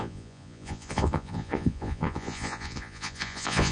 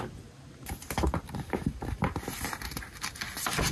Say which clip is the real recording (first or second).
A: second